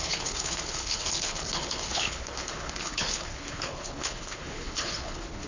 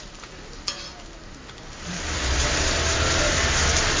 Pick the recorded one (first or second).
second